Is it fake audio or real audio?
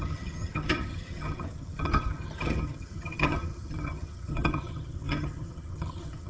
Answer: fake